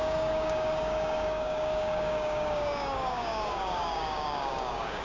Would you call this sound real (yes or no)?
no